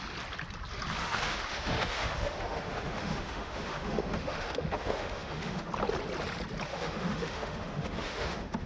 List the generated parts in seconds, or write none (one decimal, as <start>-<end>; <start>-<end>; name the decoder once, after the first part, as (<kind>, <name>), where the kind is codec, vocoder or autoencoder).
1.0-5.7 (autoencoder, DAC-VAE); 6.7-8.7

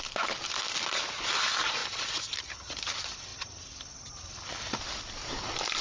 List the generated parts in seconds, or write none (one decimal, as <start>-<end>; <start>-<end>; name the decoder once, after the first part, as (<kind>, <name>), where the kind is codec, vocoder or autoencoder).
none